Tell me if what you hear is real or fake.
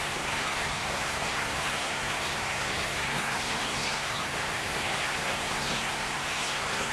fake